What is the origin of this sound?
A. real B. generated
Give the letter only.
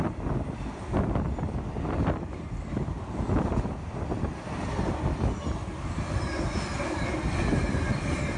A